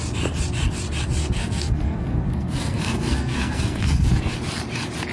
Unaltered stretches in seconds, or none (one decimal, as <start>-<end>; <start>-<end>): 0.0-1.2; 4.3-5.1